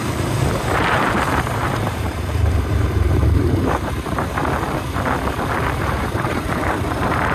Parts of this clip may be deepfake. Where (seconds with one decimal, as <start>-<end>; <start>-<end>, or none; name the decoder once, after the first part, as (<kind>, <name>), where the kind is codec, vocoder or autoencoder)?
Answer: 0.0-4.4 (vocoder, BigVGAN v2); 5.8-7.3